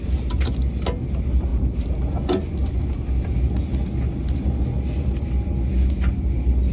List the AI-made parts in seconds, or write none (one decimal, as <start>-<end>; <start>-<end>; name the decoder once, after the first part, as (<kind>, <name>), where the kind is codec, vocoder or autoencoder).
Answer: none